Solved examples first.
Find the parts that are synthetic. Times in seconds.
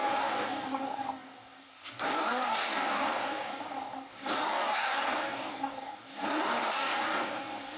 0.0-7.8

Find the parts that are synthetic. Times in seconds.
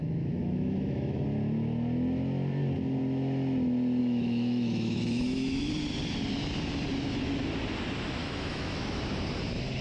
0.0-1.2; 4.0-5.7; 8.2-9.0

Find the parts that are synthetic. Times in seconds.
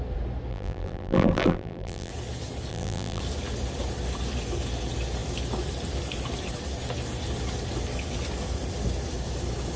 0.5-2.1; 2.7-3.2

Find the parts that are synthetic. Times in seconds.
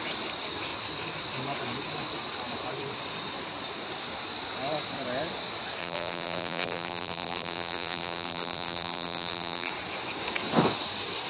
5.8-9.7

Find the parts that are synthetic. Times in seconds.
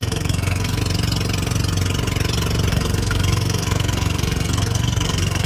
0.0-0.8; 2.7-5.5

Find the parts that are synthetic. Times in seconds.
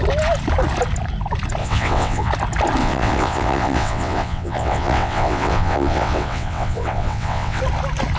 1.6-2.3; 2.8-7.6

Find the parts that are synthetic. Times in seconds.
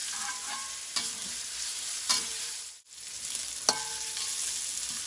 0.0-0.7; 1.2-2.8